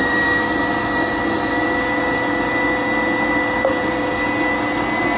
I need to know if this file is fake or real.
real